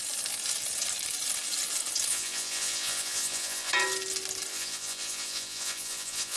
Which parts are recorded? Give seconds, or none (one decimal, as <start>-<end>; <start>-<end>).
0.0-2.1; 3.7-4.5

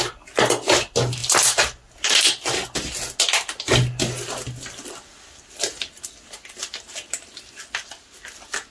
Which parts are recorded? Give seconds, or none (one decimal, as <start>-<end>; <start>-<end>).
0.0-8.7

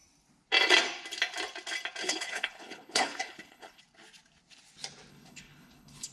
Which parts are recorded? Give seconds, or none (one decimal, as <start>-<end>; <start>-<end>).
0.0-2.0; 3.8-5.1

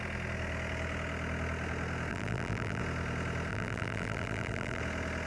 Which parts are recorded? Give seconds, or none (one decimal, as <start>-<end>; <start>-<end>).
0.0-2.1; 2.8-3.5; 4.8-5.3

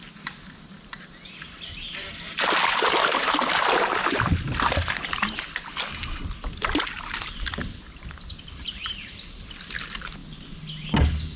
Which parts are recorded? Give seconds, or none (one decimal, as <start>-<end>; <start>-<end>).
0.0-11.4

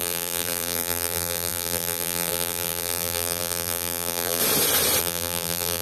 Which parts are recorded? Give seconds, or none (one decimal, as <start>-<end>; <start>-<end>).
4.4-5.0

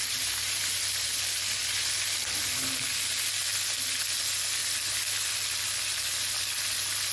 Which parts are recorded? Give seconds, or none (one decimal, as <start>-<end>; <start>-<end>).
0.0-7.1